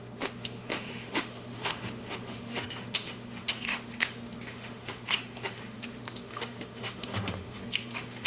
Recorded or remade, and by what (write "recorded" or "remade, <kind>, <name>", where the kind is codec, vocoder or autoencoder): remade, autoencoder, DAC-VAE